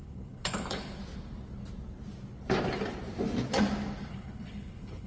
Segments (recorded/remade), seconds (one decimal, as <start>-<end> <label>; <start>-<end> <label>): 0.0-1.0 remade; 1.0-4.1 recorded; 4.1-5.1 remade